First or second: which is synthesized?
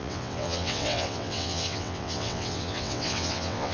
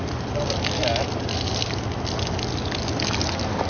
first